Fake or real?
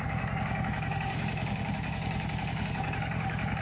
fake